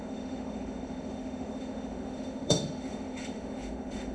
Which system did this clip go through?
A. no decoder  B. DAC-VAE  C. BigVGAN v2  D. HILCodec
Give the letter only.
B